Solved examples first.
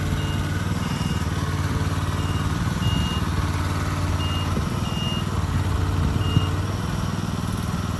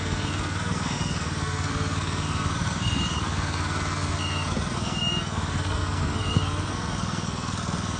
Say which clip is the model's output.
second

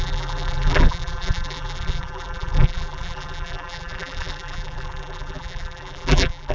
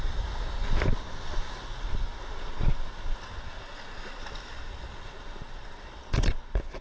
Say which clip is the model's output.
first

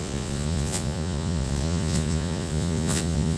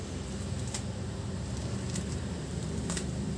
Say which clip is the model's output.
first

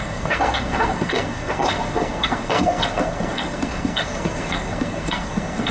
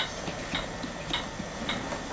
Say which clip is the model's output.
first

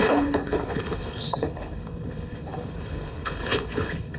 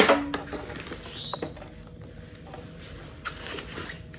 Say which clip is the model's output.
first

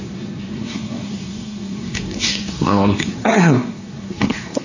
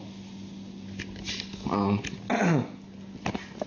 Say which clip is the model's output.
first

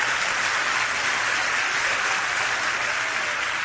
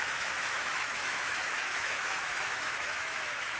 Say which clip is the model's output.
second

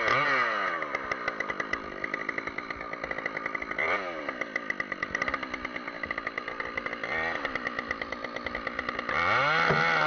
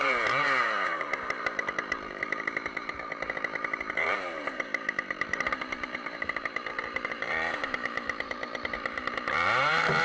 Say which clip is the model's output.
second